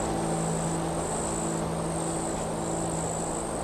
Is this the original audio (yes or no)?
yes